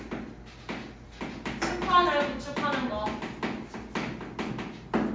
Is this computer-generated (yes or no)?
no